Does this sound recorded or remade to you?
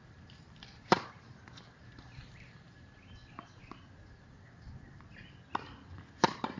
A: recorded